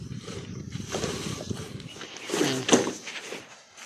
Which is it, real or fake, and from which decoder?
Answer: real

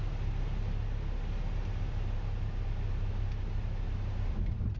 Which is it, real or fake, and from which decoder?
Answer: real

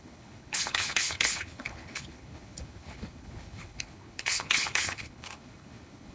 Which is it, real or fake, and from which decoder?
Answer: fake, codec, HILCodec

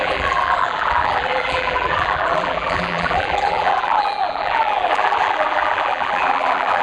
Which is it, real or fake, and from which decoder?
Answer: fake, vocoder, BigVGAN v2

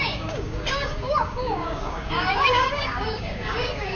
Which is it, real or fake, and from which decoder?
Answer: fake, codec, DAC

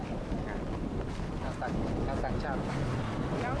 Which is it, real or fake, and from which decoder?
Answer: real